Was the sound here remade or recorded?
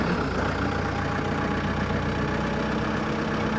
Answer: recorded